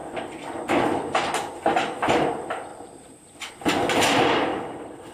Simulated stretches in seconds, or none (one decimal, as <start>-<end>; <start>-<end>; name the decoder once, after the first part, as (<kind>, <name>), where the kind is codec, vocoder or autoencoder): 2.7-3.5 (vocoder, BigVGAN v2); 4.5-5.1

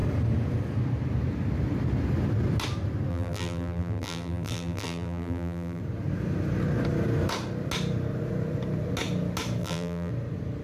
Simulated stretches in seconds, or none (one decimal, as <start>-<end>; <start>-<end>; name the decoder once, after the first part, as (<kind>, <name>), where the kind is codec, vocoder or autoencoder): 3.1-5.8 (vocoder, BigVGAN v2); 9.6-10.1

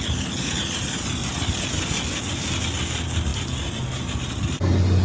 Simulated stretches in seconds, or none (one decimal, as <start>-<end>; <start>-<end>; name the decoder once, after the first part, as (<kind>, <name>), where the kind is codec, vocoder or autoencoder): none

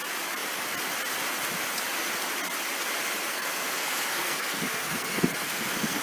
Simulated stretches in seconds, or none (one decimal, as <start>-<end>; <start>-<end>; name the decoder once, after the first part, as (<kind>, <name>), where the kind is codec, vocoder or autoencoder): 3.3-6.0 (codec, SNAC)

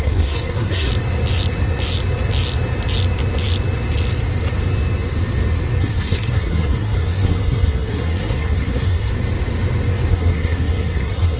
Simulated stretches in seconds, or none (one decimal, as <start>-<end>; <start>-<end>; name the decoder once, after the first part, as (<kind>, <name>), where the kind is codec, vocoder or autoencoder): 0.0-0.9 (codec, SNAC); 5.8-9.1; 10.1-11.4

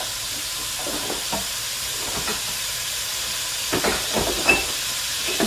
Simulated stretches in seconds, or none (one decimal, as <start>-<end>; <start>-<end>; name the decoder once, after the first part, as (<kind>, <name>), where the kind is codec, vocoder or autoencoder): 0.0-5.5 (vocoder, BigVGAN v2)